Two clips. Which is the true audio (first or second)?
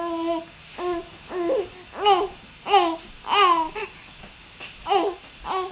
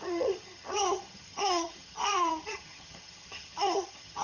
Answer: first